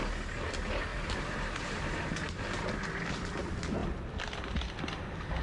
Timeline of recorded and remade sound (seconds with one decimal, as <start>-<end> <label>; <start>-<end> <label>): 0.0-0.9 recorded; 0.9-2.1 remade; 2.1-5.4 recorded